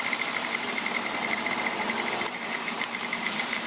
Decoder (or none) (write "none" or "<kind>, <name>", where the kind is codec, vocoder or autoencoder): vocoder, BigVGAN v2